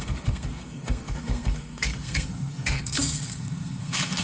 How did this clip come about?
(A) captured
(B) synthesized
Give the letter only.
B